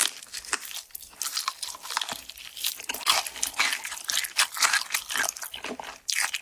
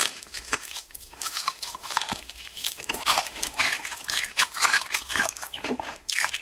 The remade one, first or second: second